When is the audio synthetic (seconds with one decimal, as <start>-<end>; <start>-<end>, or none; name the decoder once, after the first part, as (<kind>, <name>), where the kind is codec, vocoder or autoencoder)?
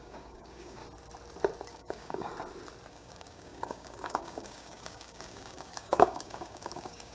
0.0-0.8 (codec, DAC); 1.7-2.3; 2.9-7.1